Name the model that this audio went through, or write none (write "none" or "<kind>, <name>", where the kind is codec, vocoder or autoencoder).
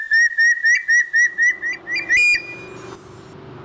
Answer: none